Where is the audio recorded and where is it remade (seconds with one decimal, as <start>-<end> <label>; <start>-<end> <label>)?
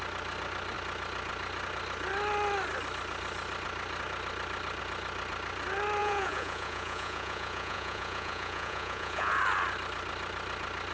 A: 0.0-6.0 recorded; 6.0-9.3 remade; 9.3-10.9 recorded